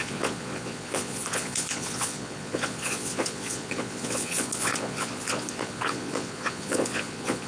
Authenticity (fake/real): fake